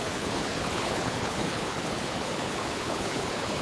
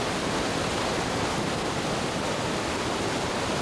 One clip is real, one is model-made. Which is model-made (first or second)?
first